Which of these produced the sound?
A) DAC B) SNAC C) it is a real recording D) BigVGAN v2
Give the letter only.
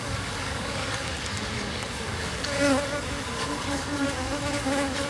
A